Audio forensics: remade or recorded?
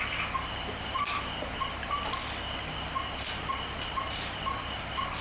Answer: recorded